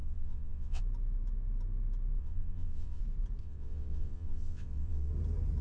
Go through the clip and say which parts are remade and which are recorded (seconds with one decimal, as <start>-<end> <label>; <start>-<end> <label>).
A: 0.0-0.8 remade; 0.8-2.2 recorded; 2.2-3.0 remade; 3.0-3.4 recorded; 3.4-5.1 remade; 5.1-5.6 recorded